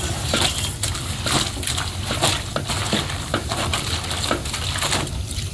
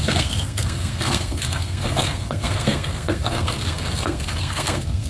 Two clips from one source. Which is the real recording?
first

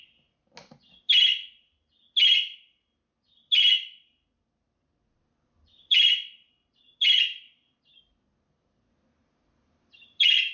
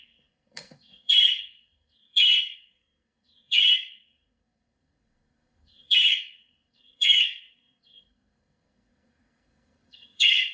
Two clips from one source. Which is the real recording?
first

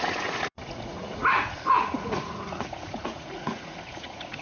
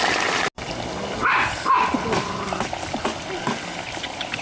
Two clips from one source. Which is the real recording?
second